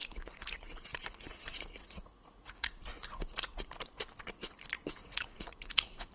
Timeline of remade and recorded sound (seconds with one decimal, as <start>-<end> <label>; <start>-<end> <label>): 0.0-3.7 remade; 3.7-5.0 recorded; 5.0-6.1 remade